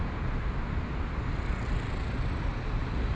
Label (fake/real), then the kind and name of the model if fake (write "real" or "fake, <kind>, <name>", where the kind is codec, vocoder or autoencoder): real